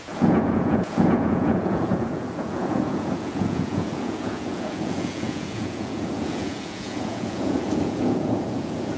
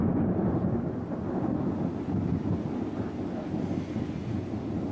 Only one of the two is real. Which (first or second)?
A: second